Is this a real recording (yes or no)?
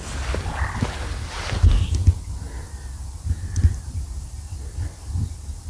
yes